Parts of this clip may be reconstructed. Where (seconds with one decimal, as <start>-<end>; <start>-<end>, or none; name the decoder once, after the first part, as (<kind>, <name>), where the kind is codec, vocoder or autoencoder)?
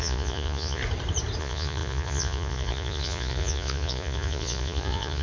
0.0-0.8 (vocoder, Vocos); 1.4-5.2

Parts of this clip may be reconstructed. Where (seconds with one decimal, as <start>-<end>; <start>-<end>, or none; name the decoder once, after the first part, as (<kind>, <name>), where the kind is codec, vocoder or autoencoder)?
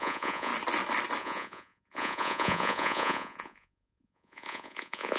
0.0-0.5 (vocoder, Vocos); 1.2-5.2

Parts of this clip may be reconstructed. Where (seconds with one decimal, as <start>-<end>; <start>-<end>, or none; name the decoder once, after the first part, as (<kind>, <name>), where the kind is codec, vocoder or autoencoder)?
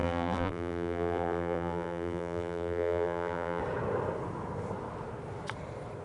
0.0-3.6 (vocoder, BigVGAN v2)